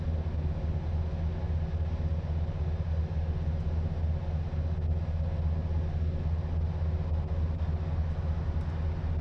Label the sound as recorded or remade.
recorded